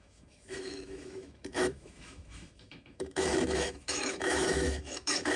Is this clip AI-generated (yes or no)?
yes